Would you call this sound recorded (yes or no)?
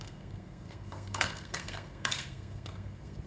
no